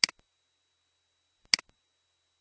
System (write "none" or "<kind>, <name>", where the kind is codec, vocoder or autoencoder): none